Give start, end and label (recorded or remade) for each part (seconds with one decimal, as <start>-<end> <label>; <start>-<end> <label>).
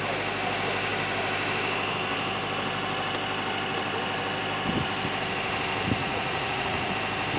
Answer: 0.0-6.0 recorded; 6.0-6.9 remade; 6.9-7.4 recorded